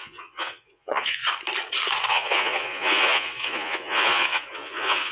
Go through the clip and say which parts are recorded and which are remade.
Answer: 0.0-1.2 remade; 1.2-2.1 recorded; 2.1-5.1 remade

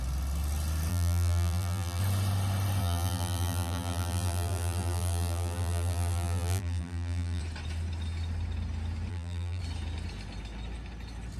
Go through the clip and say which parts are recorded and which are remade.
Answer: 0.0-0.9 recorded; 0.9-2.0 remade; 2.0-2.8 recorded; 2.8-7.4 remade; 7.4-9.1 recorded; 9.1-9.6 remade; 9.6-11.4 recorded

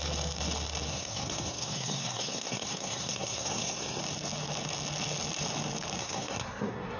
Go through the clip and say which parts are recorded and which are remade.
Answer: 0.0-0.9 recorded; 0.9-4.0 remade; 4.0-6.0 recorded; 6.0-7.0 remade

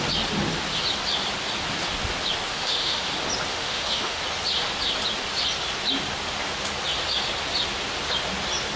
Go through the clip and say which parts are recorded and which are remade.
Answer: 0.0-2.5 recorded; 2.5-3.0 remade; 3.0-3.5 recorded; 3.5-4.2 remade; 4.2-8.8 recorded